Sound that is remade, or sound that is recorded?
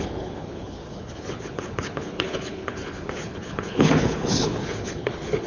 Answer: remade